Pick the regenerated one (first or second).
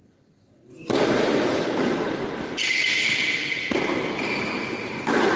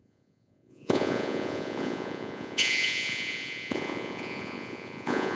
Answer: second